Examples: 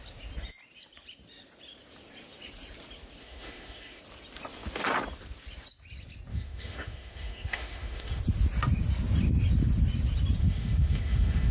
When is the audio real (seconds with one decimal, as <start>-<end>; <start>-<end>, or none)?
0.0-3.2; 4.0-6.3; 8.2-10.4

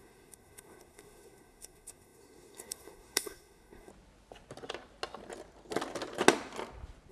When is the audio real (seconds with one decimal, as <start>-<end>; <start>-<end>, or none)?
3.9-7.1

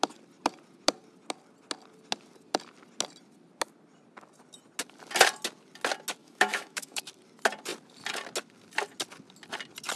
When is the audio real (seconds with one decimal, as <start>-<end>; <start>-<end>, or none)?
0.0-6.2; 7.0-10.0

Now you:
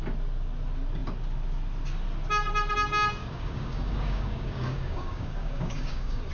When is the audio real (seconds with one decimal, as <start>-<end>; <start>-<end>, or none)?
0.0-3.2

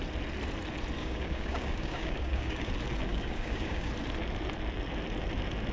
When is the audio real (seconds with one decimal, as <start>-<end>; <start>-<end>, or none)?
0.0-1.0; 2.7-3.1; 3.9-5.7

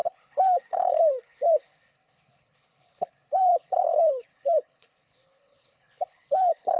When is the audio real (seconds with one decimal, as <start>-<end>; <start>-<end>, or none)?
none

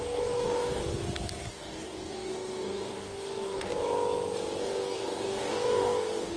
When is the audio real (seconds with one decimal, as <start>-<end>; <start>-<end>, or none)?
0.8-1.5; 3.7-4.6